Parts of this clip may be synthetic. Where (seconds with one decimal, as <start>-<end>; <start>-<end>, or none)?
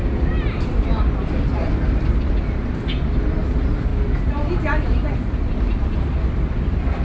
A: none